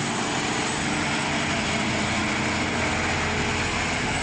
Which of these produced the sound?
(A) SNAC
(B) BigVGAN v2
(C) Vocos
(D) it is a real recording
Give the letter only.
D